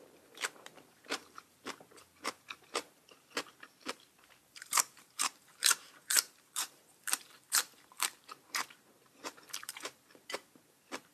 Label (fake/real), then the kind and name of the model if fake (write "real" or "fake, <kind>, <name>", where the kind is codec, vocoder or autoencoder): fake, vocoder, BigVGAN v2